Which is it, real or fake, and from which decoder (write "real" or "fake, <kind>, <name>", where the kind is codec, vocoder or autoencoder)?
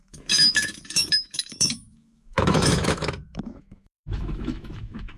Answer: fake, autoencoder, DAC-VAE